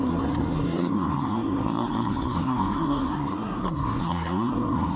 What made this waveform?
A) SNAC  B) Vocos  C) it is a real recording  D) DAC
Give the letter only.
A